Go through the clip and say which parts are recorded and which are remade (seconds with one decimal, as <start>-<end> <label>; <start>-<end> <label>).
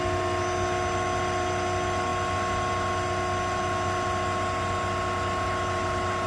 0.0-6.3 recorded